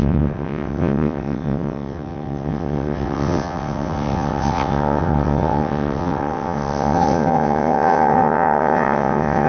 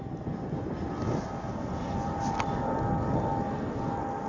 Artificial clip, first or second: first